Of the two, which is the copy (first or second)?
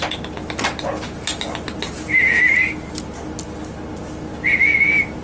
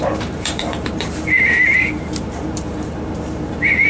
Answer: second